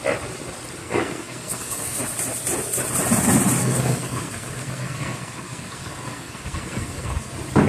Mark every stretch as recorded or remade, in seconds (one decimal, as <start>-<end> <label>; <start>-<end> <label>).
0.0-0.8 recorded; 0.8-2.0 remade; 2.0-3.6 recorded; 3.6-7.3 remade; 7.3-7.7 recorded